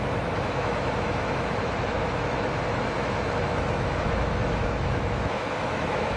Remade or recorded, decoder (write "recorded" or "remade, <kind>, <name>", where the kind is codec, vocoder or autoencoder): remade, autoencoder, DAC-VAE